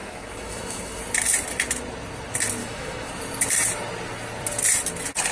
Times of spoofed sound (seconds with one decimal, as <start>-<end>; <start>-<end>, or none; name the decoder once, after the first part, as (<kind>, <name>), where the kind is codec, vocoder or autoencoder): 0.0-1.0 (autoencoder, DAC-VAE); 2.6-3.1